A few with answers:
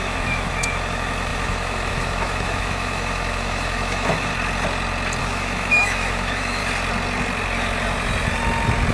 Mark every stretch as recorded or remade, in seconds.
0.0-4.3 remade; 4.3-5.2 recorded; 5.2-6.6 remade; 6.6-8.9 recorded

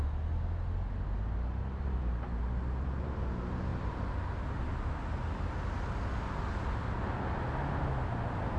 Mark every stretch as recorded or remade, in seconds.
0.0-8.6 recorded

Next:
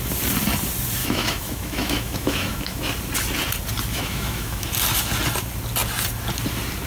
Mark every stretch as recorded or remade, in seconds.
0.0-1.0 recorded; 1.0-2.9 remade; 2.9-3.9 recorded; 3.9-4.7 remade; 4.7-6.9 recorded

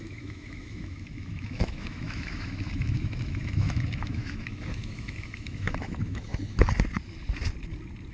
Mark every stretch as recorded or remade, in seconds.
0.0-6.3 remade; 6.3-8.1 recorded

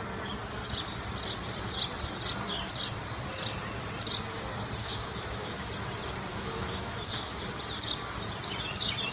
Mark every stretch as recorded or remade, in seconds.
0.0-4.8 recorded; 4.8-5.7 remade; 5.7-6.3 recorded; 6.3-7.4 remade; 7.4-9.1 recorded